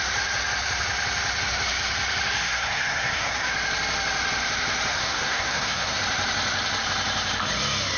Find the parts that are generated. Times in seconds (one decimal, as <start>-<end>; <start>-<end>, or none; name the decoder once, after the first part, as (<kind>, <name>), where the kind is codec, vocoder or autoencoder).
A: 2.4-3.5 (codec, SNAC); 4.9-6.0